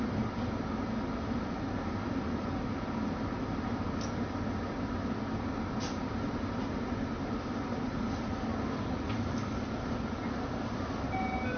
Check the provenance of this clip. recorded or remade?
recorded